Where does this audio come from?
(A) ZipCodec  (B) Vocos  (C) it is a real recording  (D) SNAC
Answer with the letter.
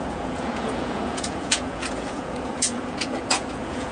B